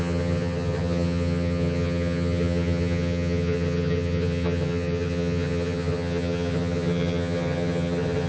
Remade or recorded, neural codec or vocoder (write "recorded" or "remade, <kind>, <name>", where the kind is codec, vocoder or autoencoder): remade, vocoder, HiFi-GAN